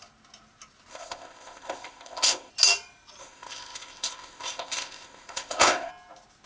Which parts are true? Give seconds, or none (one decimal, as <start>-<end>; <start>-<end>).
0.0-0.9; 2.5-3.2; 5.9-6.5